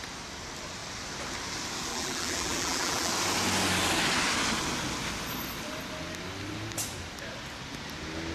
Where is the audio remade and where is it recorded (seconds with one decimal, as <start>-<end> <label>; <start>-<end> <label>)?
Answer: 0.0-1.9 recorded; 1.9-3.1 remade; 3.1-8.3 recorded